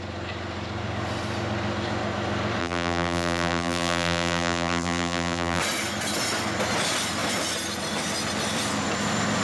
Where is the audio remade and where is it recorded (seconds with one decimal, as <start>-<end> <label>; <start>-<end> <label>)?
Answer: 0.0-2.6 recorded; 2.6-5.6 remade; 5.6-9.4 recorded